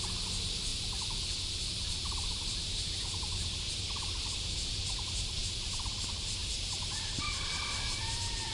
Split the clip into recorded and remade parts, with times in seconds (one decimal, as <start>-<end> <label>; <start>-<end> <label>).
0.0-0.7 remade; 0.7-1.9 recorded; 1.9-8.5 remade